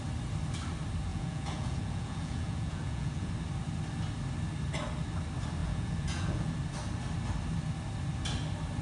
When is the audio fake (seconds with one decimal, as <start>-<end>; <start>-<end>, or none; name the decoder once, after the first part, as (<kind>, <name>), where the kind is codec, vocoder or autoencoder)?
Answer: 1.1-3.3 (vocoder, Vocos); 5.6-6.5